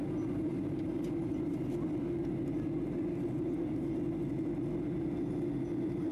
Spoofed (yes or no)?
no